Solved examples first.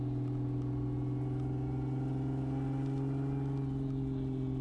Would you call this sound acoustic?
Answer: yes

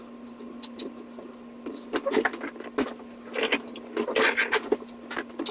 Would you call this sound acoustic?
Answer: yes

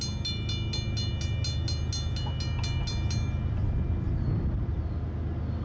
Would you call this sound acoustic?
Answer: yes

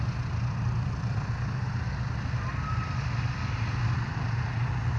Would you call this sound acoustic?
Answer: yes